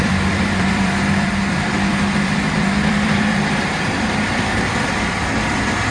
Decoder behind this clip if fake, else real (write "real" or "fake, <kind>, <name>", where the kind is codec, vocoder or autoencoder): fake, vocoder, BigVGAN v2